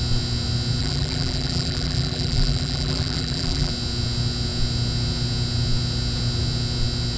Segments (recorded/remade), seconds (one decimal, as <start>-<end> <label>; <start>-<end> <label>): 0.0-0.8 recorded; 0.8-3.7 remade; 3.7-7.2 recorded